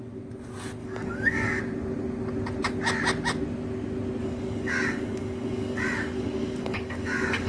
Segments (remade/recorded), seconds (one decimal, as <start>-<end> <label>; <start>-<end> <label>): 0.0-0.8 recorded; 0.8-1.6 remade; 1.6-4.2 recorded; 4.2-7.5 remade